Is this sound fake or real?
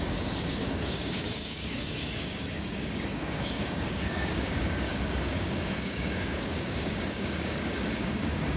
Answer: fake